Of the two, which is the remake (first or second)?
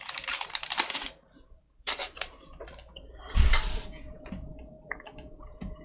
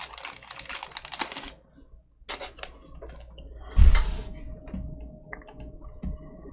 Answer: first